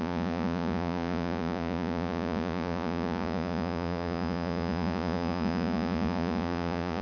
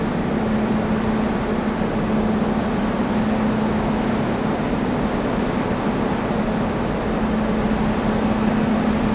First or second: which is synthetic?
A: first